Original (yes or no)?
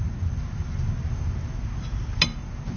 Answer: yes